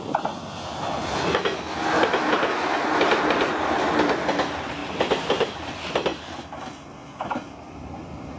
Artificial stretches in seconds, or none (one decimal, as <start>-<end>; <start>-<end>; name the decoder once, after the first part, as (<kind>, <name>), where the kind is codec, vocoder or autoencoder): 4.8-5.6 (vocoder, BigVGAN v2); 6.1-6.6